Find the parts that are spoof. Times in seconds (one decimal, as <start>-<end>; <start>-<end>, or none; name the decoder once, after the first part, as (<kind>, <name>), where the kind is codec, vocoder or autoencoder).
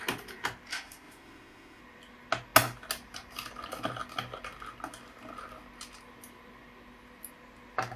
0.7-1.8 (autoencoder, DAC-VAE)